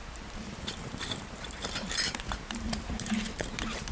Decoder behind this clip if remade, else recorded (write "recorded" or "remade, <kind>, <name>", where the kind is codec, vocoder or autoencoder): remade, vocoder, BigVGAN v2